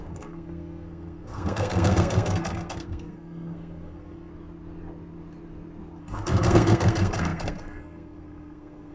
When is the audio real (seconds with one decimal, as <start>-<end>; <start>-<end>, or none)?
4.3-6.0